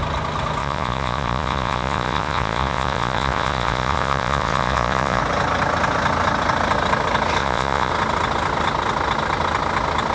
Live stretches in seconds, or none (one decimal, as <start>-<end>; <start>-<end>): 0.0-0.6; 5.2-7.4; 7.9-10.1